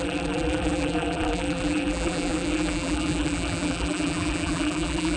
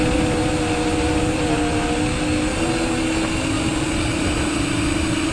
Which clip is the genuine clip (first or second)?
second